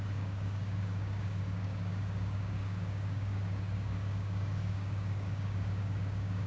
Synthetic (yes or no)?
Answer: yes